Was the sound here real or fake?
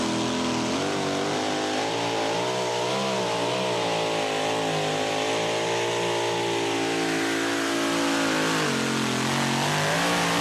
real